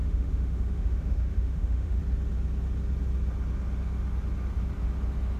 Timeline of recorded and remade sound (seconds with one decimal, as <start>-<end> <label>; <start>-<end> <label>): 0.0-2.0 remade; 2.0-5.4 recorded